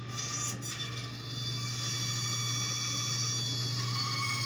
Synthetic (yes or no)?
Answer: no